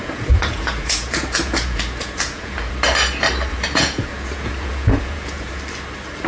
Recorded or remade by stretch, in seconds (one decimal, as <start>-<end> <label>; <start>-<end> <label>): 0.0-2.7 remade; 2.7-3.5 recorded; 3.5-5.6 remade; 5.6-6.3 recorded